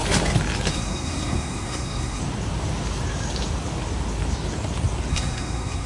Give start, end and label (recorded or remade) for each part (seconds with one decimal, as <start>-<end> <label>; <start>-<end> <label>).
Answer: 0.0-0.7 recorded; 0.7-2.2 remade; 2.2-5.1 recorded; 5.1-5.9 remade